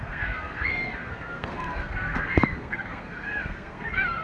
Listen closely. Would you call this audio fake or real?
fake